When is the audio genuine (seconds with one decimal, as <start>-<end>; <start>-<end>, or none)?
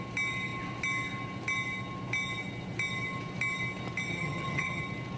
0.0-4.1; 4.8-5.2